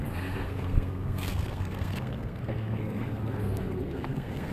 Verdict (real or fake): fake